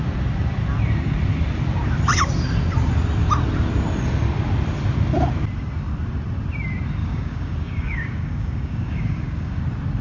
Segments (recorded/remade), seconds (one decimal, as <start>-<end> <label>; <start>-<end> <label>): 0.0-7.0 recorded; 7.0-9.6 remade; 9.6-10.0 recorded